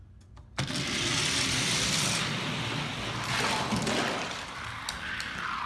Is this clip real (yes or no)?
yes